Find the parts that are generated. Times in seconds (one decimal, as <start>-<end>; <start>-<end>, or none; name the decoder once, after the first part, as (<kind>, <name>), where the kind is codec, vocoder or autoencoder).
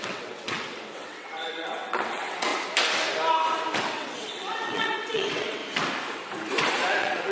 0.0-2.5 (vocoder, WaveNeXt); 3.8-5.6; 6.7-7.3